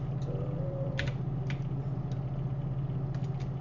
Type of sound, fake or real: real